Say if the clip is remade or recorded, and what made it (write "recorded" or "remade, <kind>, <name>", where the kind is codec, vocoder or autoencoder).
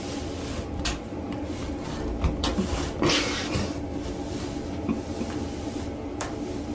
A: remade, vocoder, BigVGAN v2